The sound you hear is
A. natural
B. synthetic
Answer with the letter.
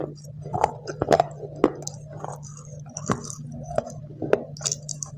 A